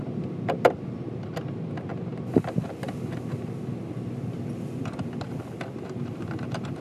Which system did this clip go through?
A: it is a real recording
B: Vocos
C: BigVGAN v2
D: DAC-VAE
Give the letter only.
A